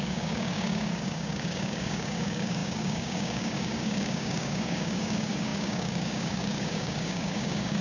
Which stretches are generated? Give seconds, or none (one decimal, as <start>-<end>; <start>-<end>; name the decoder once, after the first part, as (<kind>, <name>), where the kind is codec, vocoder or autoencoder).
0.0-7.8 (codec, DAC)